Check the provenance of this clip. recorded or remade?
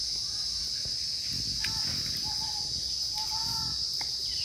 recorded